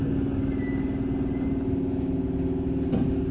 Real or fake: real